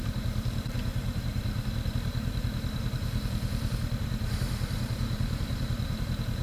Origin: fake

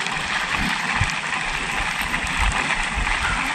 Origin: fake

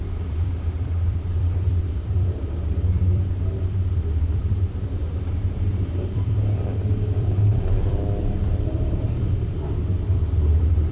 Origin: fake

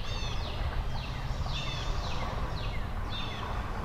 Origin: real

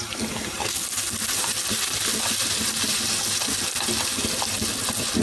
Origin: real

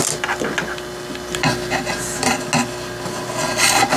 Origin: real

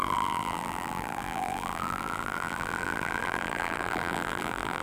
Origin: fake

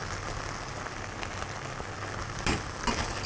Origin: real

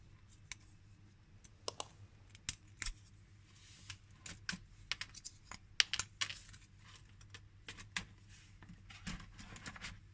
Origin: real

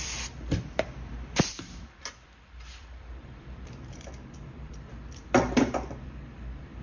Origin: fake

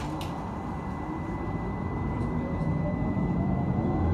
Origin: fake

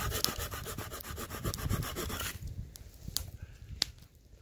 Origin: fake